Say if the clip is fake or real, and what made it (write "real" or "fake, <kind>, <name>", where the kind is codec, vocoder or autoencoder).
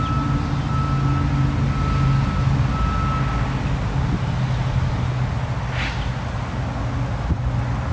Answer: real